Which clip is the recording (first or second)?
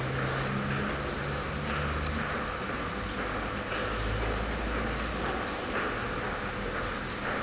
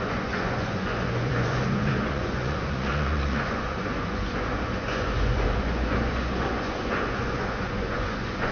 first